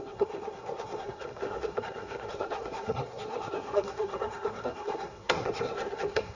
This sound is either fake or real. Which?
fake